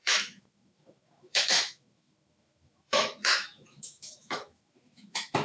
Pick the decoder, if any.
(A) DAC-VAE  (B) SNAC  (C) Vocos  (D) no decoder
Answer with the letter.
A